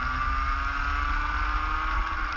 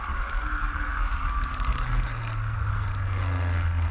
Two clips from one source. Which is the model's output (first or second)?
second